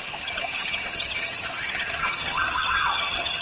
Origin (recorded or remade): remade